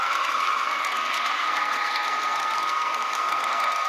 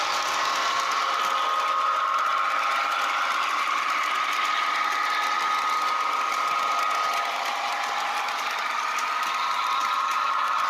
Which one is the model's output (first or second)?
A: first